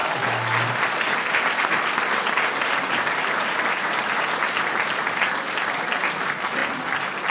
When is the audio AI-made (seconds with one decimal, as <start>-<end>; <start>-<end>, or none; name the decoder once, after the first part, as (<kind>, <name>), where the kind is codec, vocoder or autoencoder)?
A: none